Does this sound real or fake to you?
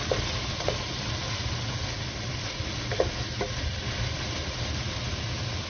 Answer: real